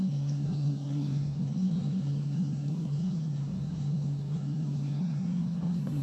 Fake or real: fake